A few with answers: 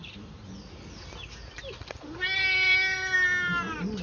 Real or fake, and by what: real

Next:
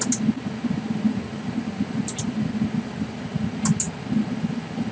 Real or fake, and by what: real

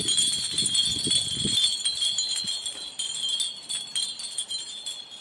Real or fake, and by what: real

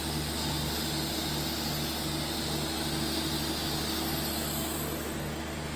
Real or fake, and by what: real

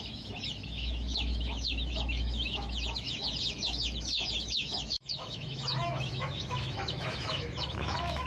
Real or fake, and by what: fake, autoencoder, DAC-VAE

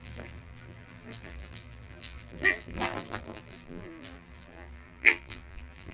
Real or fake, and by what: fake, vocoder, BigVGAN v2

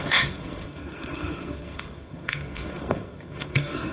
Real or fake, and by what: fake, codec, SNAC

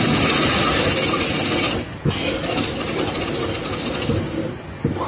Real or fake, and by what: real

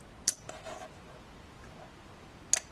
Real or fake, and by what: real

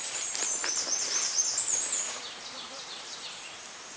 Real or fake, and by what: fake, vocoder, BigVGAN v2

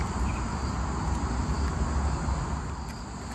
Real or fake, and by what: real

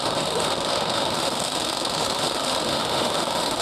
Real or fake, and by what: fake, autoencoder, DAC-VAE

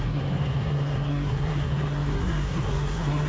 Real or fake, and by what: fake, codec, SNAC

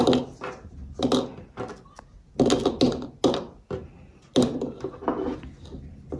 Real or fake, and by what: real